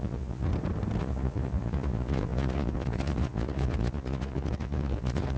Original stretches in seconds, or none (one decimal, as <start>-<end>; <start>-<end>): 0.5-1.0